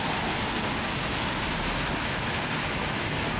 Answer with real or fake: real